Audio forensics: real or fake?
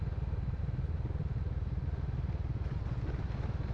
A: real